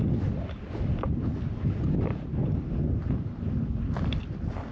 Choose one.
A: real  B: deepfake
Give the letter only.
A